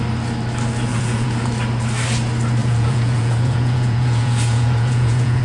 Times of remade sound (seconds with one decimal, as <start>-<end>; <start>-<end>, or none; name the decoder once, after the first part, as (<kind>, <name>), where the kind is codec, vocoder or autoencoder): 0.9-1.5 (vocoder, Vocos); 2.6-5.4